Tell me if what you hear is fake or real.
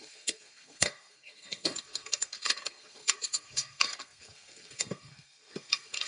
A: fake